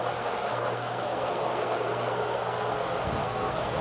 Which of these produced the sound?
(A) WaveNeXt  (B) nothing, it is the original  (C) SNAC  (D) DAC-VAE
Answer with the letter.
C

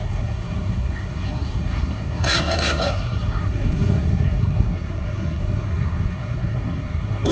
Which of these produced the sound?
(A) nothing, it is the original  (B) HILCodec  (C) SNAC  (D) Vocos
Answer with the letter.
C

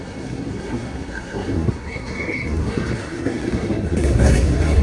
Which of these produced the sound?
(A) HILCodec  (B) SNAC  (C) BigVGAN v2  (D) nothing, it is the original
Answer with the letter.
B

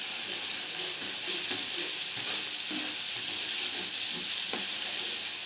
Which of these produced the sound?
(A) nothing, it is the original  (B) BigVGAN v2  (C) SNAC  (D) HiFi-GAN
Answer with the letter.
A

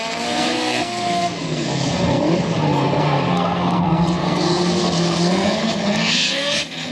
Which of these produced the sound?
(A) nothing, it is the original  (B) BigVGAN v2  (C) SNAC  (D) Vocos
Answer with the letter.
C